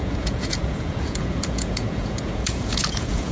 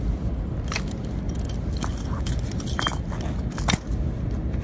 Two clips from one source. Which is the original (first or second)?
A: second